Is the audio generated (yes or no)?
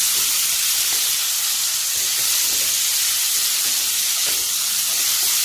no